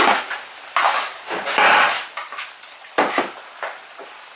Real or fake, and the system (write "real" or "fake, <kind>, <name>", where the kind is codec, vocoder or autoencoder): real